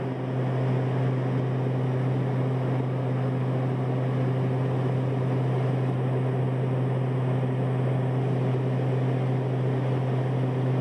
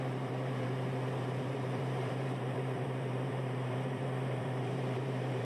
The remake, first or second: second